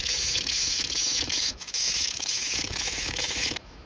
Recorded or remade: remade